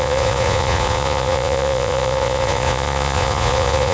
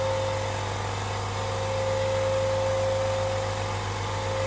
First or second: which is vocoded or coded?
first